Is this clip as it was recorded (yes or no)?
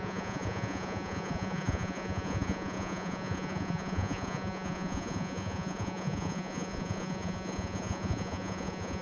no